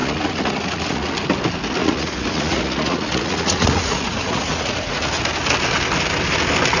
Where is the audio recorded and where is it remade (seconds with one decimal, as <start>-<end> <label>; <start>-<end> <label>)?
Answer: 0.0-1.1 remade; 1.1-1.8 recorded; 1.8-5.1 remade; 5.1-6.8 recorded